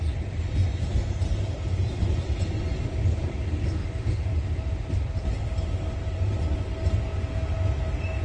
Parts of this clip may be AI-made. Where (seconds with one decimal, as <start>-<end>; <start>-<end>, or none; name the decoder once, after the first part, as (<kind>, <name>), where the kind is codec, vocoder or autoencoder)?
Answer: none